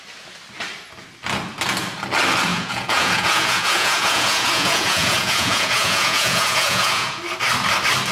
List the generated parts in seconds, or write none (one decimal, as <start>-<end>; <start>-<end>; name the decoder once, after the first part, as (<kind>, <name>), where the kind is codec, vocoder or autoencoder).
2.5-7.2 (vocoder, Vocos)